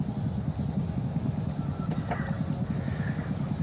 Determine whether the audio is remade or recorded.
recorded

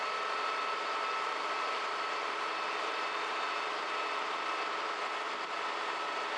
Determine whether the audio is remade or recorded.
recorded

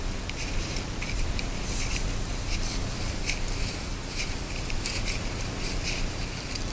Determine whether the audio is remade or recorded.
remade